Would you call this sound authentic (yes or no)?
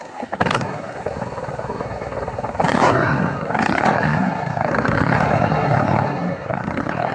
no